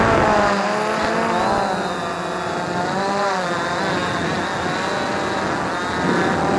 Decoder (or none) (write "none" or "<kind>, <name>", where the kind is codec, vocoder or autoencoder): none